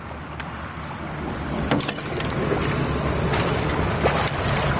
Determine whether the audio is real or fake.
real